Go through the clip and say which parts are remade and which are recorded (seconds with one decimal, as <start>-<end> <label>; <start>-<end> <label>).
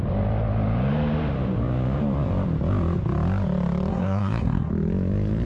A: 0.0-3.9 recorded; 3.9-4.7 remade; 4.7-5.5 recorded